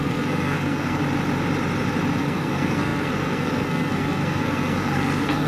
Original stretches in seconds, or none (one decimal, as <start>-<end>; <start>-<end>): 1.0-2.2